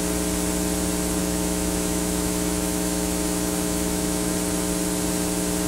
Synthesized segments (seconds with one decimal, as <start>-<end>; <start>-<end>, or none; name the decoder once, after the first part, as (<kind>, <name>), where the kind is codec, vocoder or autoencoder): 1.2-4.3 (autoencoder, DAC-VAE)